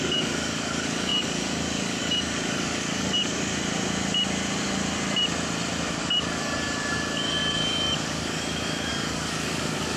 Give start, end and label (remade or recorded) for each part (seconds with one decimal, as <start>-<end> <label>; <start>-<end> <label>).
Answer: 0.0-3.5 remade; 3.5-5.9 recorded; 5.9-10.0 remade